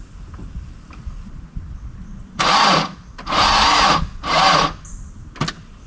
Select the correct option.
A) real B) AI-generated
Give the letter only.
A